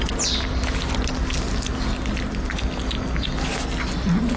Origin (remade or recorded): recorded